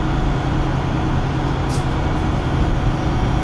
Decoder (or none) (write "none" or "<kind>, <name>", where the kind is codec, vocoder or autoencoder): none